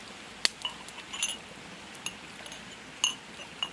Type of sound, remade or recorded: recorded